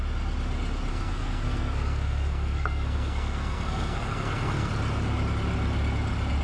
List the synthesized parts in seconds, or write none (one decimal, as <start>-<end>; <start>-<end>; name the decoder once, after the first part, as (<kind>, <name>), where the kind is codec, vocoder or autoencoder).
0.9-4.7 (codec, SNAC)